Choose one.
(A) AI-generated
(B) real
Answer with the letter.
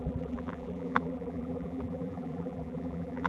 A